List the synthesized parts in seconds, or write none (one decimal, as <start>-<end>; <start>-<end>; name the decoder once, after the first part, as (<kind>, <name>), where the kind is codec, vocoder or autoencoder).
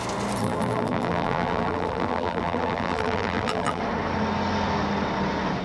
0.4-3.8 (vocoder, BigVGAN v2)